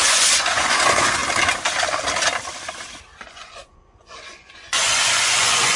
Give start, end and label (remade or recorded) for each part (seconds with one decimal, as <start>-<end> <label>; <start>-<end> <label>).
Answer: 0.0-1.2 remade; 1.2-3.2 recorded; 3.2-5.8 remade